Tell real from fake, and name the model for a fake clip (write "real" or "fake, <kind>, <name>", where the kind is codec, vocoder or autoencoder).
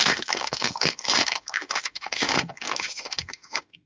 fake, autoencoder, DAC-VAE